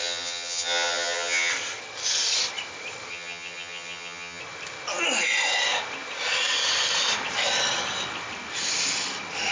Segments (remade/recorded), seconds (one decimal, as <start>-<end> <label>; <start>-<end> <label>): 0.0-1.5 remade; 1.5-3.1 recorded; 3.1-4.4 remade; 4.4-9.5 recorded